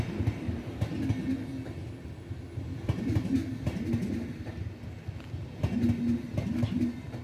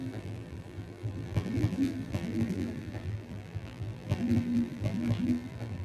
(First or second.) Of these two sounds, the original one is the first